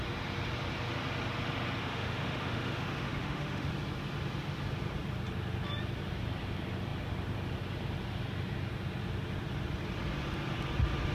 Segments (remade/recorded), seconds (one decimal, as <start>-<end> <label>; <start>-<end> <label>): 0.0-1.8 recorded; 1.8-3.7 remade; 3.7-11.1 recorded